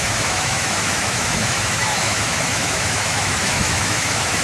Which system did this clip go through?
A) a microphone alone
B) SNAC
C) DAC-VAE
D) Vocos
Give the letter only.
C